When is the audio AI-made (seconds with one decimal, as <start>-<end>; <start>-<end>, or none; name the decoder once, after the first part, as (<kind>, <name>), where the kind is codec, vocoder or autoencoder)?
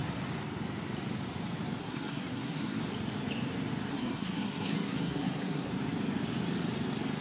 1.8-2.8 (codec, SNAC); 3.9-5.7